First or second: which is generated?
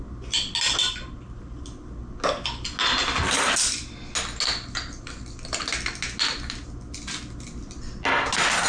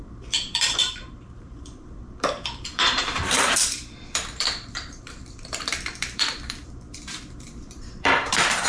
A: second